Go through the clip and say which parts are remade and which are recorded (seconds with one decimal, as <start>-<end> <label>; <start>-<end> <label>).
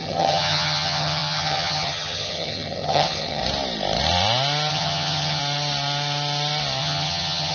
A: 0.0-3.4 remade; 3.4-4.7 recorded; 4.7-5.4 remade; 5.4-6.8 recorded; 6.8-7.5 remade